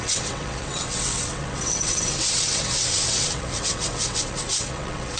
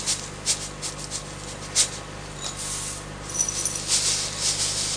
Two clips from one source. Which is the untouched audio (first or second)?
second